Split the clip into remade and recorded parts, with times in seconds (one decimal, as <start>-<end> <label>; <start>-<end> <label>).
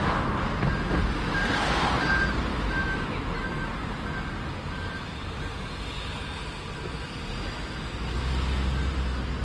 0.0-2.5 recorded; 2.5-3.1 remade; 3.1-9.4 recorded